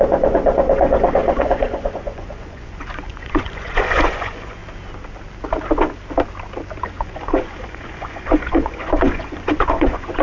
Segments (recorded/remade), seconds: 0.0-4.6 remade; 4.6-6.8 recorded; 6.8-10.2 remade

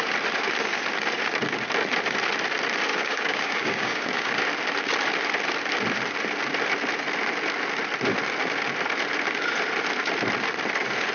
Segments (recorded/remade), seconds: 0.0-2.9 recorded; 2.9-4.4 remade; 4.4-11.1 recorded

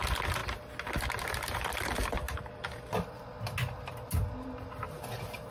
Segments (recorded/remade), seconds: 0.0-5.5 recorded

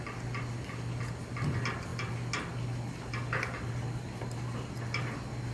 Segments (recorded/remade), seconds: 0.0-5.5 recorded

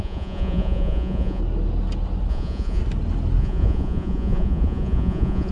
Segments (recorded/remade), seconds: 0.0-1.4 remade; 1.4-2.3 recorded; 2.3-2.8 remade; 2.8-3.4 recorded; 3.4-5.5 remade

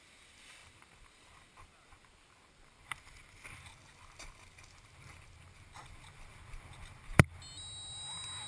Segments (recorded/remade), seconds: 0.0-8.5 recorded

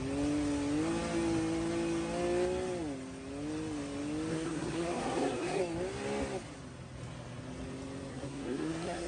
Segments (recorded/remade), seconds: 0.0-4.3 recorded; 4.3-5.6 remade; 5.6-8.1 recorded; 8.1-9.1 remade

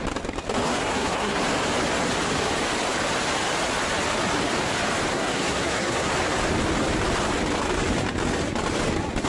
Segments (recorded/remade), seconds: 0.0-0.7 recorded; 0.7-1.4 remade; 1.4-5.1 recorded; 5.1-6.1 remade; 6.1-9.3 recorded